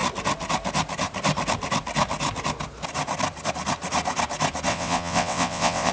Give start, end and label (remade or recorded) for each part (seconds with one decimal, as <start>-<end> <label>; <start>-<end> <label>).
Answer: 0.0-4.7 recorded; 4.7-5.9 remade